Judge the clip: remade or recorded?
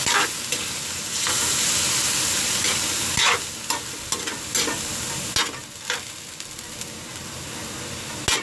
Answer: recorded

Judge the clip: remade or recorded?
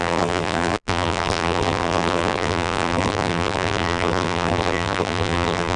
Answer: remade